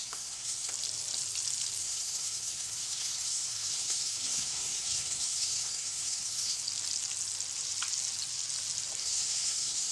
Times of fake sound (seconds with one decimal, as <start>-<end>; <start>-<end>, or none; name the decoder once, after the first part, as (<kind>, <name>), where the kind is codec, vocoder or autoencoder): 0.0-0.7 (codec, SNAC); 1.8-6.6; 9.0-9.9